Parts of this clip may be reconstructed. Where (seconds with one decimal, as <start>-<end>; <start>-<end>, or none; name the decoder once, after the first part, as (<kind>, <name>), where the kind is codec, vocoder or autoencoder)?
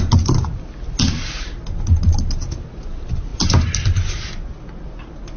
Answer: none